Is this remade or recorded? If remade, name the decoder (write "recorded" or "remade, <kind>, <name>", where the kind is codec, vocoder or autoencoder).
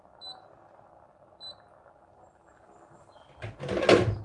recorded